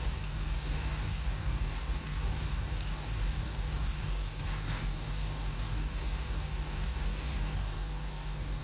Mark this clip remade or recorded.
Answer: remade